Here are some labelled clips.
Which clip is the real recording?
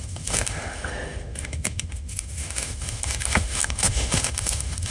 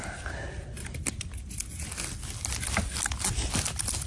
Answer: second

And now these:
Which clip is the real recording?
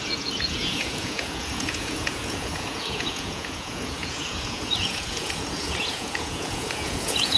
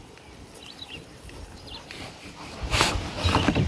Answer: second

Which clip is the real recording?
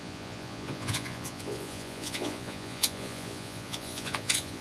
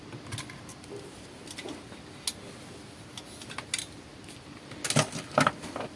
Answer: second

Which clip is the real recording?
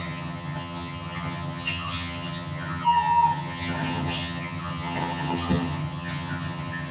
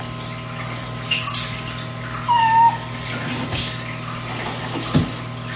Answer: second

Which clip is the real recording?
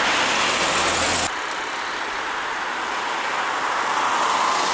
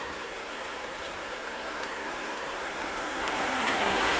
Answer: first